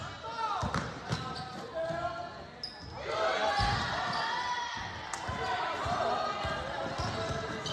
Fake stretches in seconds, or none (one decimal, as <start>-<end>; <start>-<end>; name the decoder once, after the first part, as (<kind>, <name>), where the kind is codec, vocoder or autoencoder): none